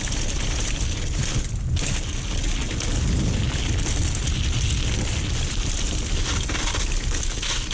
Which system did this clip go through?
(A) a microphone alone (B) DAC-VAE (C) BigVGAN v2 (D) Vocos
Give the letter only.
A